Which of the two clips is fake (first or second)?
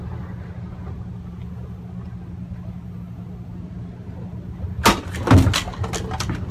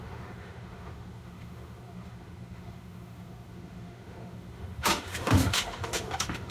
second